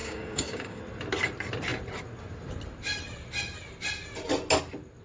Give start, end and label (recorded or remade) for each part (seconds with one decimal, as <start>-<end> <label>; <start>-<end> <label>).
0.0-0.8 remade; 0.8-5.0 recorded